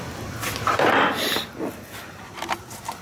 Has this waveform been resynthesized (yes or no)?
yes